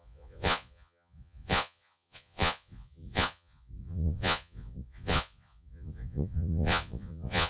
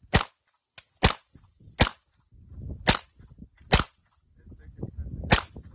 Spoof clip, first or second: first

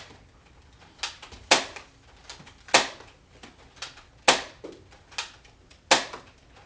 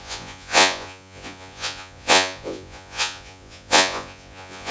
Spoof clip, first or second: second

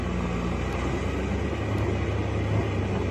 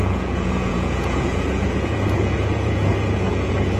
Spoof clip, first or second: second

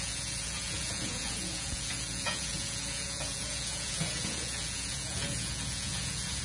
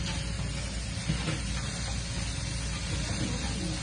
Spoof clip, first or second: first